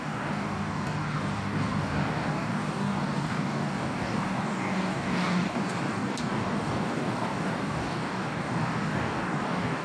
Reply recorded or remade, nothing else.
remade